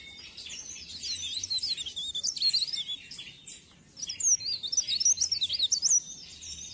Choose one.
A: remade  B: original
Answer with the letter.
B